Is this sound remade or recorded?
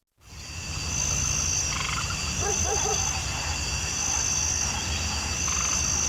recorded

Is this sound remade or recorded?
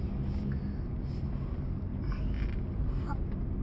recorded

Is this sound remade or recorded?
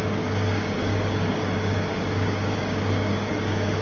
remade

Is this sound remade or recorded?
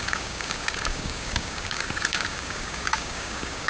remade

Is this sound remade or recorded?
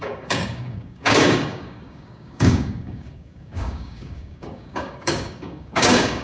remade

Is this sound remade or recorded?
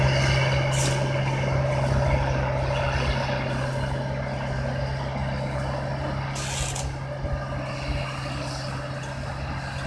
recorded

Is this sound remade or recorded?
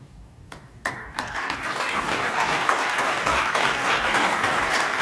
remade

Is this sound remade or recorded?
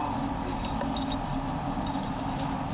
recorded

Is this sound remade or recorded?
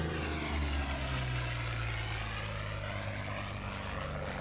recorded